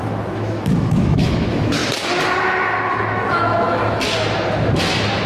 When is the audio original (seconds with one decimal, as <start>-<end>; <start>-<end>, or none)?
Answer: 1.8-2.9; 3.8-5.3